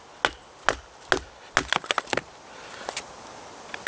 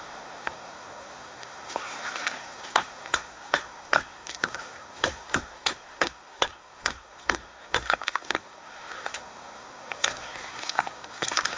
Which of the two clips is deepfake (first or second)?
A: second